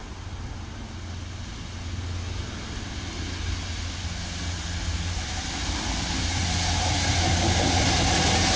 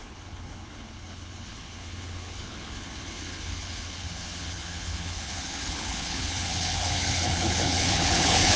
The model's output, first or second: second